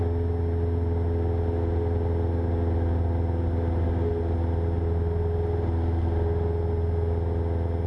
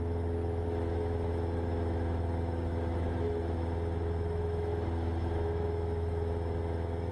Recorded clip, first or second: first